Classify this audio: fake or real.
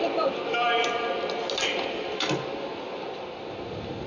real